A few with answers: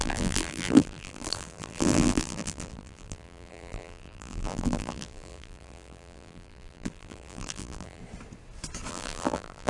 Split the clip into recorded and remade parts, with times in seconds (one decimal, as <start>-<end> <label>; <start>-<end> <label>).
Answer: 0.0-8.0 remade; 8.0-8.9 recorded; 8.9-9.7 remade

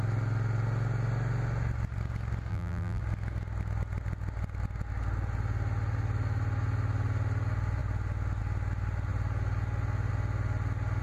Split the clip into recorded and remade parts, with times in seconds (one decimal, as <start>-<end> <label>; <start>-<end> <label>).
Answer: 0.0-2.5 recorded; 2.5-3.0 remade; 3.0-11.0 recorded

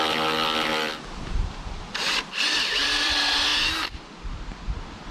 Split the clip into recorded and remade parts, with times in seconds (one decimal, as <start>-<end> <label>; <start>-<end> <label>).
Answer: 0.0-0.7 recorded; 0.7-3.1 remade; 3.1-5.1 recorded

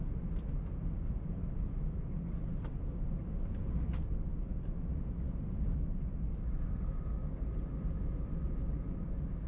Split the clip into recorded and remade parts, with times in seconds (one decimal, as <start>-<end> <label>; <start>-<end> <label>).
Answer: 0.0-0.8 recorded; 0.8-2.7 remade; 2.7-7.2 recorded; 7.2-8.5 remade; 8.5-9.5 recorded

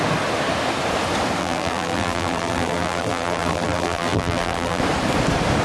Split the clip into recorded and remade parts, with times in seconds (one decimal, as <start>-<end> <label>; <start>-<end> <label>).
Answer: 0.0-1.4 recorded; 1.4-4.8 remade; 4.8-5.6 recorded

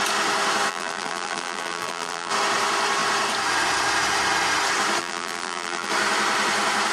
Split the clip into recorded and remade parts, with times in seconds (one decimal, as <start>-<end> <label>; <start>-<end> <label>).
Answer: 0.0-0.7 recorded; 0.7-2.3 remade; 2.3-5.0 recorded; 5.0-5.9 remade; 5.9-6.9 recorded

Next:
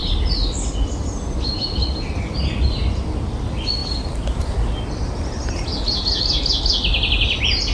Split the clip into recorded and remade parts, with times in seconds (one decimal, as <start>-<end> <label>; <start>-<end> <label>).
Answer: 0.0-7.7 recorded

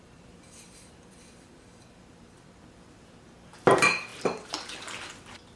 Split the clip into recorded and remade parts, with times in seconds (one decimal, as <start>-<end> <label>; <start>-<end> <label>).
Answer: 0.0-5.6 remade